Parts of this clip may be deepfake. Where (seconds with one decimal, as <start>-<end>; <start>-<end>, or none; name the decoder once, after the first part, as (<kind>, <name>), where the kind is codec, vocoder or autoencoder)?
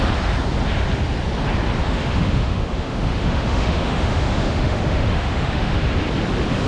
1.8-5.8 (autoencoder, DAC-VAE)